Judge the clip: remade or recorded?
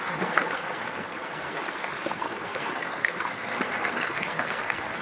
remade